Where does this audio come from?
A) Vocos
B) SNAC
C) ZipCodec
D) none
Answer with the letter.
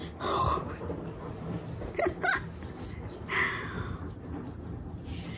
D